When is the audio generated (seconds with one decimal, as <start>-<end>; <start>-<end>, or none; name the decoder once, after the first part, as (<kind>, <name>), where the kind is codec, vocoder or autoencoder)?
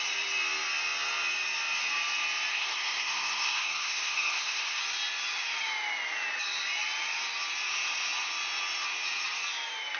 2.5-4.8 (codec, SNAC)